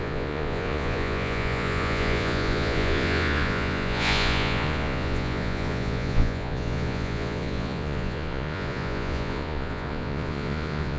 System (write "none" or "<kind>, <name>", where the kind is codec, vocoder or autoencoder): vocoder, Vocos